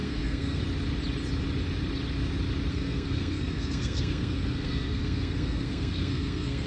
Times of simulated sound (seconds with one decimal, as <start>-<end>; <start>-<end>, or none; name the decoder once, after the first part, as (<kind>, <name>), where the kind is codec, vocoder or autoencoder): 0.0-0.6 (codec, SNAC); 2.7-6.7